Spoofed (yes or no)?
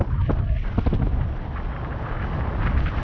no